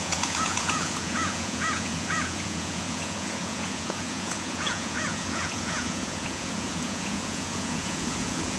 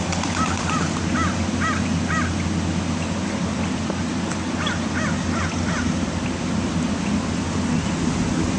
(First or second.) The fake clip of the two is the first